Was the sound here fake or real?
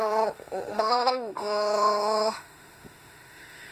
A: fake